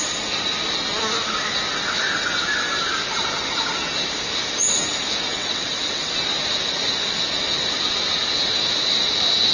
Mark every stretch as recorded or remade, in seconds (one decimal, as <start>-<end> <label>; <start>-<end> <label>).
0.0-5.3 recorded; 5.3-6.1 remade; 6.1-9.5 recorded